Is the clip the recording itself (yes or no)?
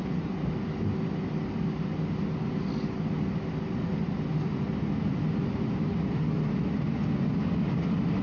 yes